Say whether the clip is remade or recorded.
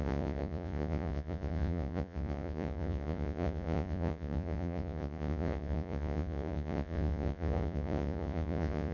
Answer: remade